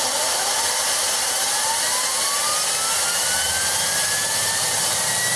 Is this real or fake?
real